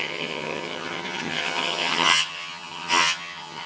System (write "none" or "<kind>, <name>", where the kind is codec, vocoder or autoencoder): vocoder, HiFi-GAN